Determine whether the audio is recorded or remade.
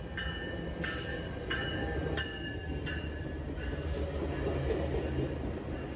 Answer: recorded